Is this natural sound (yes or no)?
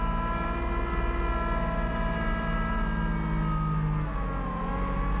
yes